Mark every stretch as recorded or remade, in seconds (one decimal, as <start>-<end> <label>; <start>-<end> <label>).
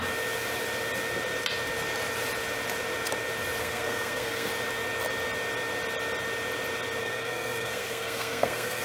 0.0-3.6 recorded; 3.6-4.5 remade; 4.5-7.0 recorded; 7.0-8.8 remade